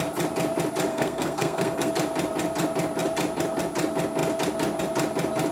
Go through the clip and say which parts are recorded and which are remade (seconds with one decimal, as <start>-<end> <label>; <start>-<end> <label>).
0.0-0.9 recorded; 0.9-1.9 remade; 1.9-5.5 recorded